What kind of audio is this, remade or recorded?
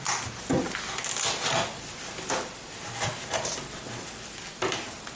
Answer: recorded